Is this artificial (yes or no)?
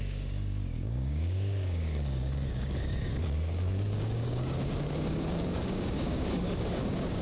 yes